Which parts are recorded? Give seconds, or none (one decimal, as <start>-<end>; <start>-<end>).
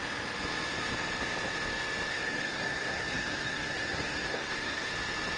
0.0-2.1; 4.9-5.4